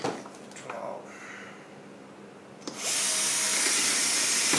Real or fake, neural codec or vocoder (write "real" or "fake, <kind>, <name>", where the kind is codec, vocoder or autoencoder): real